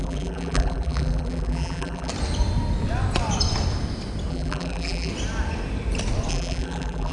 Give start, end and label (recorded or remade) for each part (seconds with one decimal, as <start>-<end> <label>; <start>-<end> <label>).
0.0-2.1 remade; 2.1-4.3 recorded; 4.3-5.1 remade; 5.1-6.3 recorded; 6.3-7.1 remade